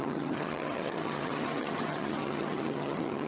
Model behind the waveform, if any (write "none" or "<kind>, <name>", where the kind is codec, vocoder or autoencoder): vocoder, HiFi-GAN